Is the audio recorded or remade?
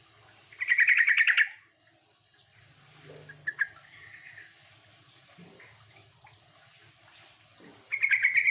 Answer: recorded